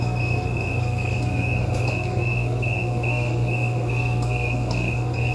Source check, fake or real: fake